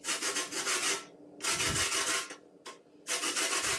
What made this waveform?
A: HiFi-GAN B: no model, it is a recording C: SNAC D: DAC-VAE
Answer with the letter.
B